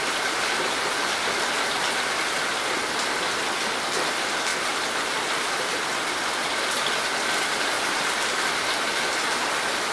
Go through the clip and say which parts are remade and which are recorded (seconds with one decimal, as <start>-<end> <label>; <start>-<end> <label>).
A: 0.0-9.9 recorded